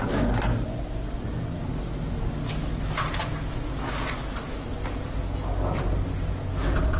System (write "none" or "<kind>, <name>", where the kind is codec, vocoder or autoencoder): none